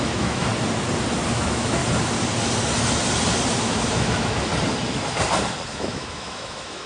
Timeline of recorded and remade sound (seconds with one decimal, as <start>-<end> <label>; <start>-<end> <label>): 0.0-0.5 remade; 0.5-1.3 recorded; 1.3-1.8 remade; 1.8-3.6 recorded; 3.6-4.5 remade; 4.5-5.7 recorded; 5.7-6.9 remade